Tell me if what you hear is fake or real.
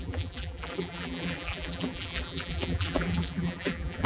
fake